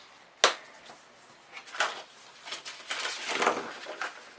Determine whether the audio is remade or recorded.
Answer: recorded